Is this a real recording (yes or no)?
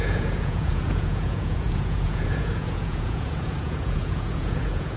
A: no